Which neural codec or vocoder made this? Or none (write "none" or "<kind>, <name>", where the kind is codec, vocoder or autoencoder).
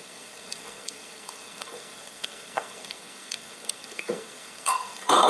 codec, SNAC